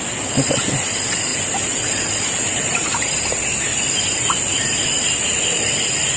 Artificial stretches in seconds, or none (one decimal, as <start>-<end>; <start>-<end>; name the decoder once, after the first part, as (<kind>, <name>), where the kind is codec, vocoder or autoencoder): 1.3-2.0 (vocoder, BigVGAN v2); 2.5-3.3